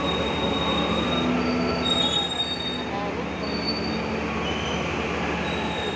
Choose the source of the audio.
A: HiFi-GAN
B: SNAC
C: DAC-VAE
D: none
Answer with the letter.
D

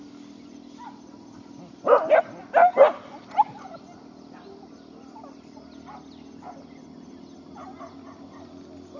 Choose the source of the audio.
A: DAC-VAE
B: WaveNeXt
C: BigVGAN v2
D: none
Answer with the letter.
D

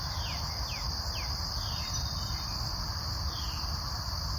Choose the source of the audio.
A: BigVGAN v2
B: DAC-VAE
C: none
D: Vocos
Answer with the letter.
C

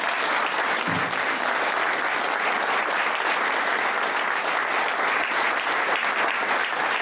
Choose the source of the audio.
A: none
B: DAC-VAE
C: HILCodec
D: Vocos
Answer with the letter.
A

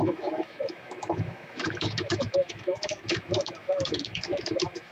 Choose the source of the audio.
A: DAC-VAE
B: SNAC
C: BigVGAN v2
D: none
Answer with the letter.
A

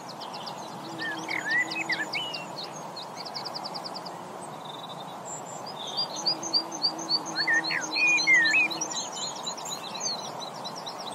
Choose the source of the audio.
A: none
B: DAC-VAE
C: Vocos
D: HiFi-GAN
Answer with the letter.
A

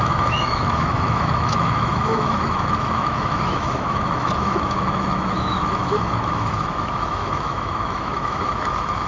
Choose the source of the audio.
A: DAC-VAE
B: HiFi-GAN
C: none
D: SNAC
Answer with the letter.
A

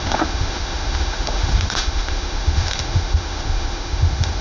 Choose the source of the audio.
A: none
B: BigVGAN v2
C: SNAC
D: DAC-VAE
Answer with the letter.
D